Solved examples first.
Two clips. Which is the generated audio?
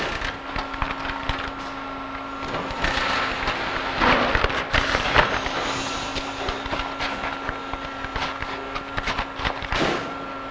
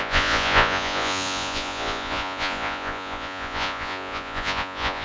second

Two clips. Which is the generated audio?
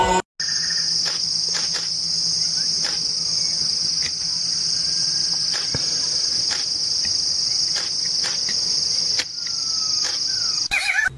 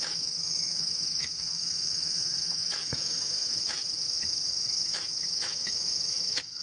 second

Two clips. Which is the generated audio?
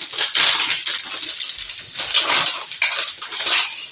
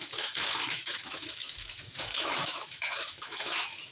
second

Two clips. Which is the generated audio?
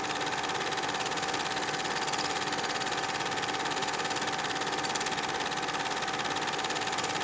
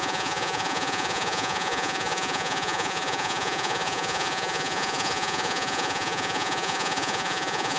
second